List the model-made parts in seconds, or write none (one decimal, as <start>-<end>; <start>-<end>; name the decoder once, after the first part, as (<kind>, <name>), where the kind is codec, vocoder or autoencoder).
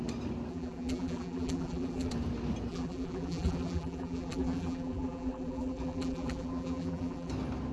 0.5-2.1 (vocoder, BigVGAN v2); 2.7-7.3